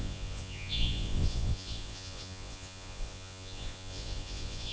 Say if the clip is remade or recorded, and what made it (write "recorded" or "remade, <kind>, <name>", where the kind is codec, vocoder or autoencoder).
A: remade, vocoder, Vocos